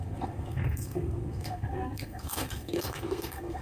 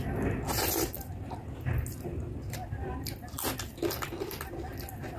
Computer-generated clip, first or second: first